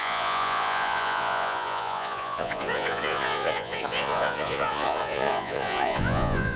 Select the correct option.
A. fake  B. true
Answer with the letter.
A